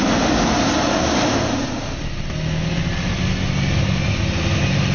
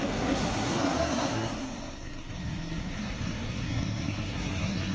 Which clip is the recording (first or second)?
first